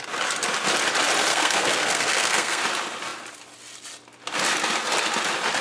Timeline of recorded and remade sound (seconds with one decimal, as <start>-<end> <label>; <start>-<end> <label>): 0.0-1.3 recorded; 1.3-2.6 remade; 2.6-5.6 recorded